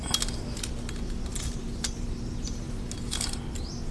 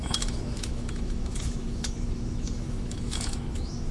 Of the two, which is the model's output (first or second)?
second